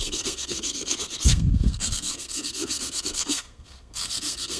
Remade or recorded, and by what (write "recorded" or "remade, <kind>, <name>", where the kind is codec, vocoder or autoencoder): remade, codec, SNAC